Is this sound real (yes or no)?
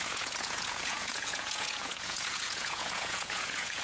no